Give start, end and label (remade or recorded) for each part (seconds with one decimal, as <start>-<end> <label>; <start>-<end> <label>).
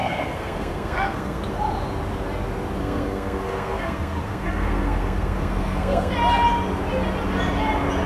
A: 0.0-1.4 remade; 1.4-2.8 recorded; 2.8-6.1 remade; 6.1-8.1 recorded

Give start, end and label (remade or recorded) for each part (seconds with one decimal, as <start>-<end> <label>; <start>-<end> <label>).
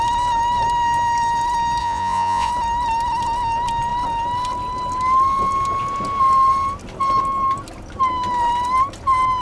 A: 0.0-1.8 recorded; 1.8-2.5 remade; 2.5-9.4 recorded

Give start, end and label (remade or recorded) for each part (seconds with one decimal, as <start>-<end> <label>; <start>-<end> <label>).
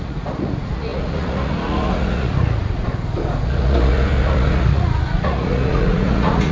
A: 0.0-2.9 remade; 2.9-3.4 recorded; 3.4-6.5 remade